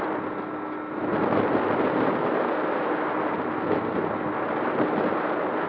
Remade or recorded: recorded